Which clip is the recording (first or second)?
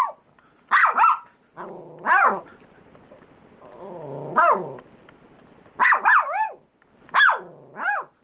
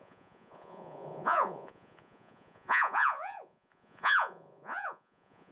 first